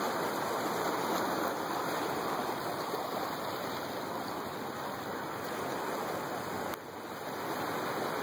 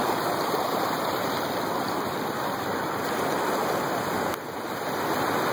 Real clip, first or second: first